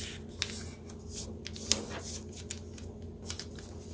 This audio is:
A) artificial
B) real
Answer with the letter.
B